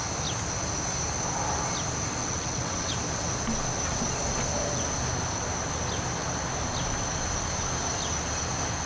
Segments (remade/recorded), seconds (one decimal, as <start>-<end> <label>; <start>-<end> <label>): 0.0-2.2 recorded; 2.2-2.9 remade; 2.9-8.9 recorded